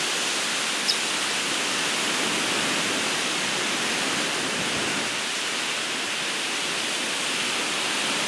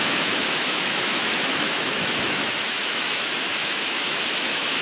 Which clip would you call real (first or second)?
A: first